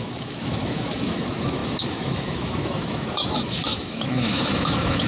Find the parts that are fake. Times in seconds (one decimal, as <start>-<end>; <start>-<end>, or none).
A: 0.0-5.1